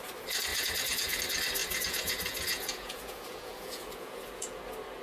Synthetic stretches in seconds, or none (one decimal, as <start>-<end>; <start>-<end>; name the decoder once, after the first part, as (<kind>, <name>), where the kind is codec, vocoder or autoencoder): 0.5-1.2 (vocoder, Vocos); 1.6-4.6